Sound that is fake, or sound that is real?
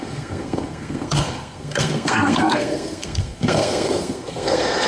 fake